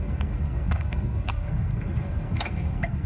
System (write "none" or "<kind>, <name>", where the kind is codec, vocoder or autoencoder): codec, SNAC